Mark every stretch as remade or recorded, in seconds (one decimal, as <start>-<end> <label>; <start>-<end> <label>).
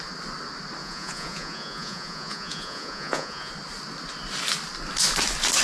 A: 0.0-0.8 recorded; 0.8-3.5 remade; 3.5-5.6 recorded